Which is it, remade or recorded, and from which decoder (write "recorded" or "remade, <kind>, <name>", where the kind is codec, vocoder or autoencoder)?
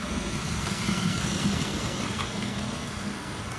remade, codec, SNAC